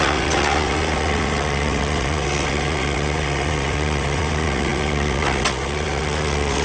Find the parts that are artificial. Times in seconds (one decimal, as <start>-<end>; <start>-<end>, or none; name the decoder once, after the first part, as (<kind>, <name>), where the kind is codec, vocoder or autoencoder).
0.0-6.6 (vocoder, WaveNeXt)